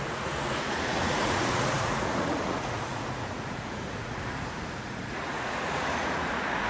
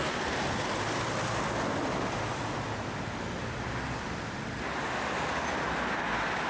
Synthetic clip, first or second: first